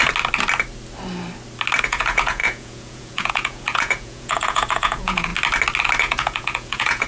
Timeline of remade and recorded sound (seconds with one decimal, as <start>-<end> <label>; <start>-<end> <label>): 0.0-1.8 recorded; 1.8-5.3 remade; 5.3-6.0 recorded; 6.0-7.1 remade